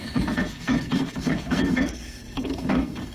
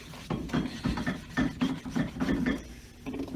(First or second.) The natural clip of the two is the second